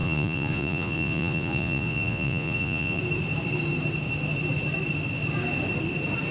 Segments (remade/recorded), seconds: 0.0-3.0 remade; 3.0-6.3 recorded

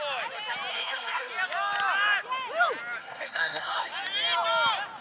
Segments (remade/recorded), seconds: 0.0-0.7 recorded; 0.7-1.3 remade; 1.3-3.0 recorded; 3.0-3.9 remade; 3.9-5.0 recorded

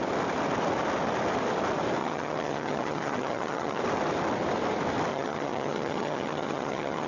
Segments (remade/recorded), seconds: 0.0-2.0 recorded; 2.0-3.8 remade; 3.8-5.1 recorded; 5.1-7.1 remade

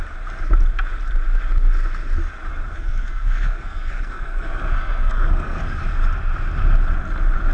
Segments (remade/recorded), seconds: 0.0-2.7 recorded; 2.7-5.6 remade; 5.6-7.5 recorded

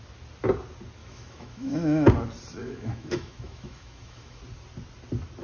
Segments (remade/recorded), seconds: 0.0-1.0 recorded; 1.0-2.1 remade; 2.1-2.6 recorded; 2.6-4.4 remade; 4.4-5.4 recorded

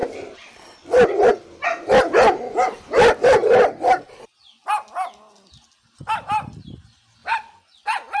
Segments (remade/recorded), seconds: 0.0-7.2 recorded; 7.2-8.2 remade

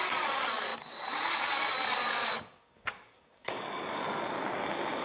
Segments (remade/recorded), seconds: 0.0-4.0 remade; 4.0-5.0 recorded

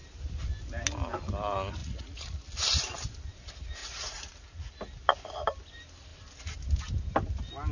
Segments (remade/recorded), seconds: 0.0-1.8 recorded; 1.8-2.4 remade; 2.4-3.8 recorded; 3.8-4.7 remade; 4.7-7.7 recorded